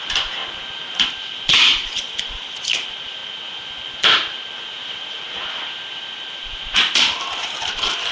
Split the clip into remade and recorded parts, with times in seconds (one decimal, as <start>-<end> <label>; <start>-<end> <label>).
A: 0.0-0.4 remade; 0.4-1.1 recorded; 1.1-3.2 remade; 3.2-4.6 recorded; 4.6-8.1 remade